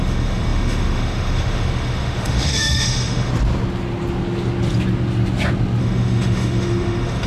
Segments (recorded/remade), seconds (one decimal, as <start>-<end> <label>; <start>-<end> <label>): 0.0-3.3 remade; 3.3-5.8 recorded; 5.8-7.3 remade